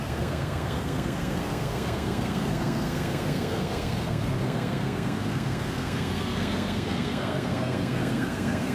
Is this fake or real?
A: fake